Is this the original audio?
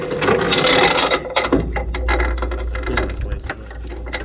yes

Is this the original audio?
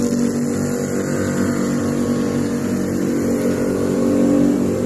yes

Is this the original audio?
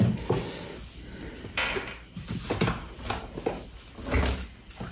yes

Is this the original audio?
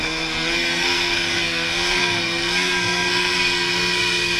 no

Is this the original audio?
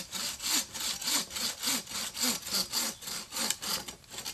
yes